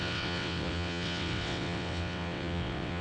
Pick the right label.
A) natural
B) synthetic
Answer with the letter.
B